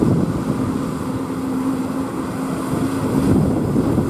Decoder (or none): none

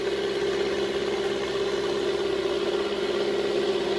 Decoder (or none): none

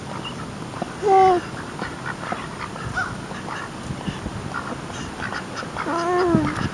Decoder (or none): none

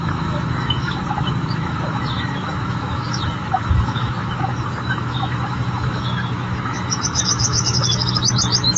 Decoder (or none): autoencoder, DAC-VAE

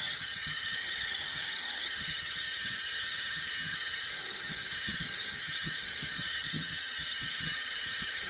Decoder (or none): vocoder, HiFi-GAN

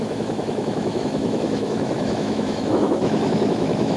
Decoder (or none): autoencoder, DAC-VAE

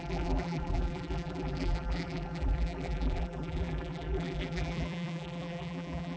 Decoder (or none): vocoder, BigVGAN v2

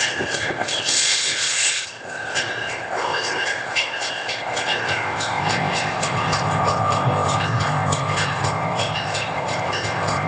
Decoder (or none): codec, ZipCodec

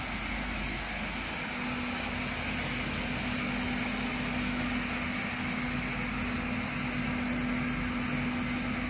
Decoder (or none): none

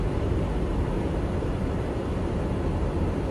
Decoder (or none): none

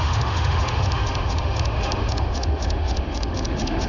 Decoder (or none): autoencoder, DAC-VAE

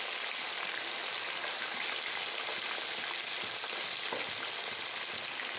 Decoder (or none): none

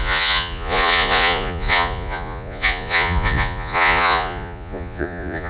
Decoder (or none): vocoder, Vocos